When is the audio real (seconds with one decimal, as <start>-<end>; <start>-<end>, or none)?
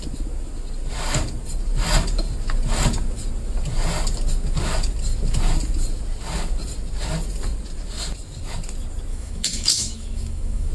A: 0.0-9.1